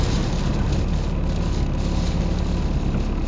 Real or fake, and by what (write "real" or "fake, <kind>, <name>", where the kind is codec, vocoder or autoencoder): real